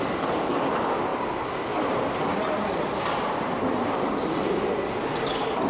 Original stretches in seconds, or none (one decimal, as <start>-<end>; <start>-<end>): 0.0-1.1; 4.5-5.7